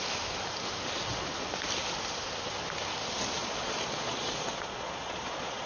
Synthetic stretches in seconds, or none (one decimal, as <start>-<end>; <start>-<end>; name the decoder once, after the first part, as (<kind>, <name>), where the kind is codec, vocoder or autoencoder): 3.4-5.7 (vocoder, Vocos)